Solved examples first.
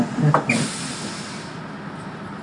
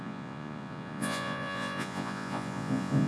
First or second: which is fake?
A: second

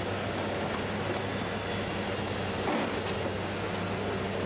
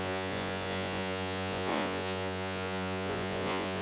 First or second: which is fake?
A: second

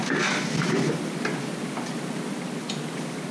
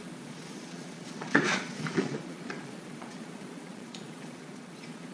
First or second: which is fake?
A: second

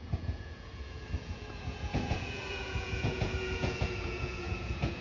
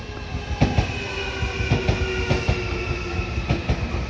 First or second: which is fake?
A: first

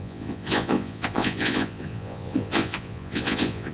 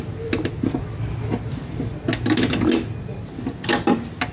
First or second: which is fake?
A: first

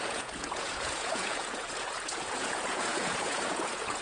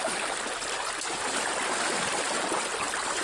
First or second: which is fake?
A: first